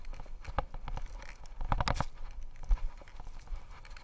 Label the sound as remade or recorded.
recorded